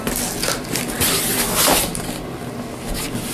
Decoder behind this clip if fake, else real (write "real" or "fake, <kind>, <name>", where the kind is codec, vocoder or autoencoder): real